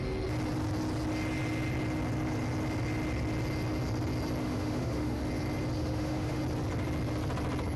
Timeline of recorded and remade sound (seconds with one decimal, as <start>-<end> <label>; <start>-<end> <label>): 0.0-4.4 recorded; 4.4-5.2 remade; 5.2-5.8 recorded; 5.8-6.4 remade; 6.4-7.8 recorded